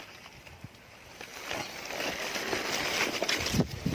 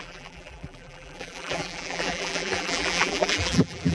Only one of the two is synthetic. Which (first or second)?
second